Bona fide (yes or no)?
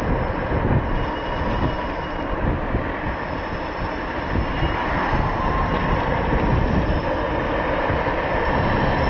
yes